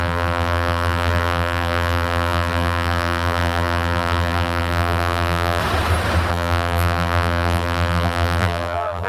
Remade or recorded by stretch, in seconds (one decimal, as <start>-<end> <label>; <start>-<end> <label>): 0.0-5.6 remade; 5.6-6.3 recorded; 6.3-9.1 remade